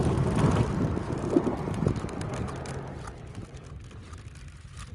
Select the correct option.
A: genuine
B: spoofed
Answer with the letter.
A